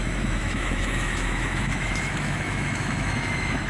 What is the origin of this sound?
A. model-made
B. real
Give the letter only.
A